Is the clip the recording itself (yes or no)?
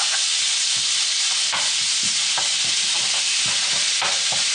yes